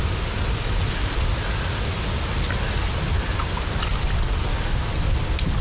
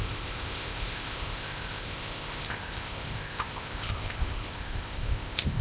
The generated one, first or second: second